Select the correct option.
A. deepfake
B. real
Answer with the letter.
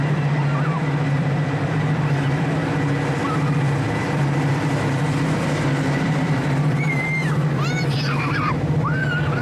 A